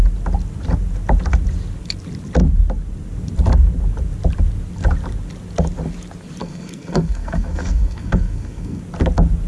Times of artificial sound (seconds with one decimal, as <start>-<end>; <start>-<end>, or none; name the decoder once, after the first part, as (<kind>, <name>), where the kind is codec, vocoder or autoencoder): 6.4-8.8 (codec, SNAC)